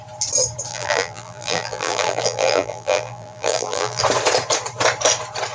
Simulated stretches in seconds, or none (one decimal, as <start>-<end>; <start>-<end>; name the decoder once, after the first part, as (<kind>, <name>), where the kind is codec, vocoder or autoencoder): 0.7-4.0 (vocoder, BigVGAN v2)